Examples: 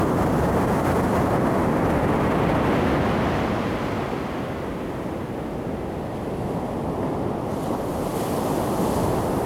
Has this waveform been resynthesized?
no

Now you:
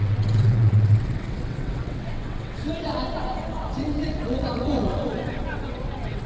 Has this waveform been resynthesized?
yes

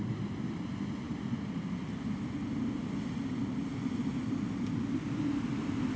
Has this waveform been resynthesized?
no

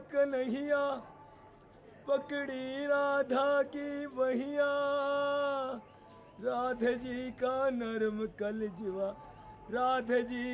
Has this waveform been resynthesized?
no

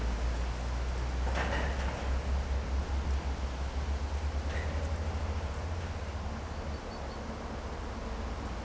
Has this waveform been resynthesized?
no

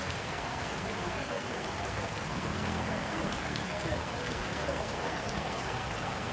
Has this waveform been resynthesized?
yes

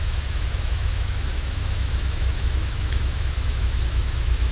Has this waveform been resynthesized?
yes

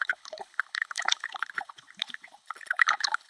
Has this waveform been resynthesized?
yes